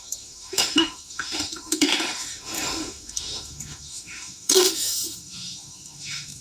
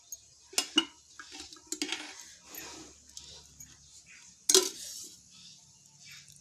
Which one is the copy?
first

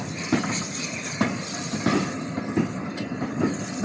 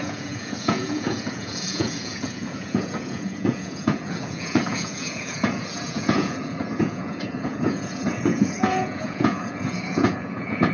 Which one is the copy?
second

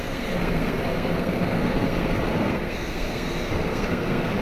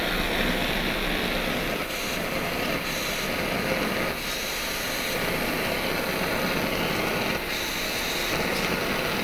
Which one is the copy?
first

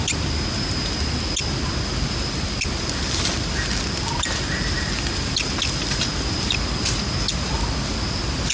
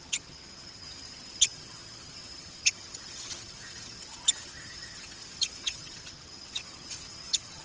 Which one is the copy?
second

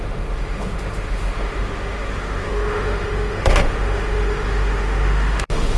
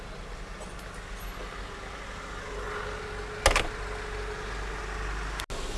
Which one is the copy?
first